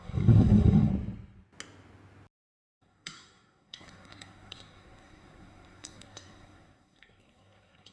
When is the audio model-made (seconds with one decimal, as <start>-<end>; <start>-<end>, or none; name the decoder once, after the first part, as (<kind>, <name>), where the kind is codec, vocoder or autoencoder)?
0.0-0.9 (codec, SNAC); 2.4-7.9